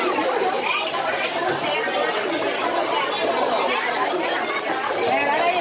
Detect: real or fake real